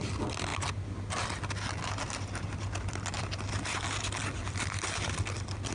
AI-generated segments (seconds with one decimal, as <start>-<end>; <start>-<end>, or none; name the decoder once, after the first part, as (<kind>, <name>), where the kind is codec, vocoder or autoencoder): none